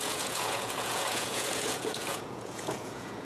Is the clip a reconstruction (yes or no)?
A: yes